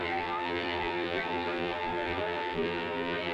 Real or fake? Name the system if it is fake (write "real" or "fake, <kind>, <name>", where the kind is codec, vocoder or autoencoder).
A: fake, vocoder, BigVGAN v2